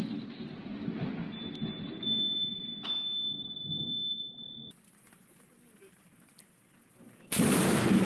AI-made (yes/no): no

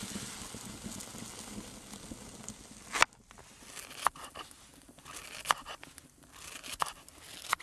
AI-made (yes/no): no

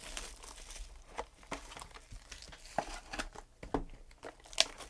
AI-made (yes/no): no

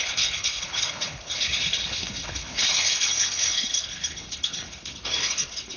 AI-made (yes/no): yes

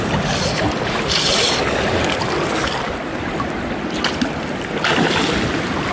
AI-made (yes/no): no